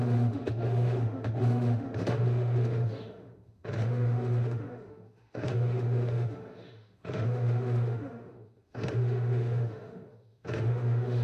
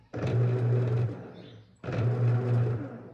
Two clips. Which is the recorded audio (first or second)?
second